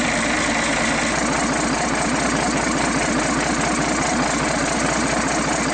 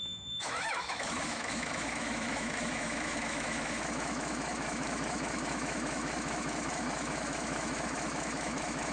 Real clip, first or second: first